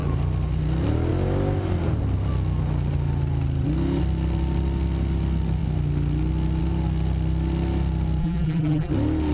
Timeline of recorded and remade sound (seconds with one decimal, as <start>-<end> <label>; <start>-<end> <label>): 0.0-8.2 recorded; 8.2-8.9 remade; 8.9-9.3 recorded

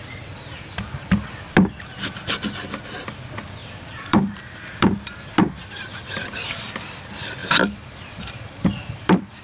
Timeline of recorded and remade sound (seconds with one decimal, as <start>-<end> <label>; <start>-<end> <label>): 0.0-3.6 recorded; 3.6-7.0 remade; 7.0-7.4 recorded; 7.4-9.4 remade

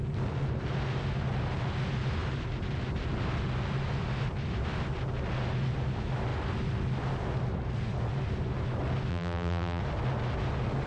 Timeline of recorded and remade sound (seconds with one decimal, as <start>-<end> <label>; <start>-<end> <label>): 0.0-9.1 recorded; 9.1-9.8 remade; 9.8-10.9 recorded

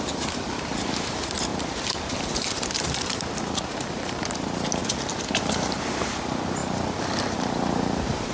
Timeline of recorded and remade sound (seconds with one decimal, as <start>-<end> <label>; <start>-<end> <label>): 0.0-4.8 remade; 4.8-5.4 recorded; 5.4-8.3 remade

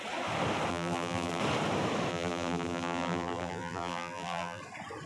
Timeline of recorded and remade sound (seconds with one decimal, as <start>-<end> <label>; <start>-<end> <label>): 0.0-0.7 recorded; 0.7-1.4 remade; 1.4-2.1 recorded; 2.1-4.6 remade; 4.6-5.1 recorded

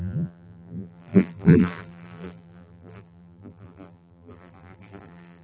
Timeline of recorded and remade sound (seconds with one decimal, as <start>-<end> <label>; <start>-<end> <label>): 0.0-5.4 remade

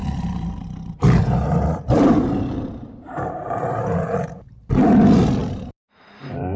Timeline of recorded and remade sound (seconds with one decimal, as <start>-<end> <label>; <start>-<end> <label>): 0.0-4.0 remade; 4.0-5.4 recorded; 5.4-6.6 remade

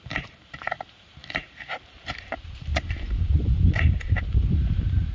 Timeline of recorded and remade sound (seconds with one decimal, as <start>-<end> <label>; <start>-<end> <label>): 0.0-2.7 remade; 2.7-3.2 recorded; 3.2-5.1 remade